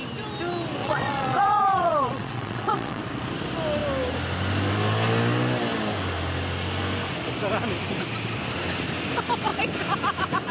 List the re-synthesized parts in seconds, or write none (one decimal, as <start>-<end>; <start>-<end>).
0.8-3.0